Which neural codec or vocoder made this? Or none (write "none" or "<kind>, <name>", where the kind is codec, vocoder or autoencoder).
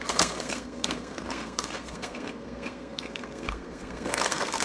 codec, SNAC